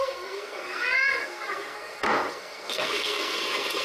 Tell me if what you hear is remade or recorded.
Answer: remade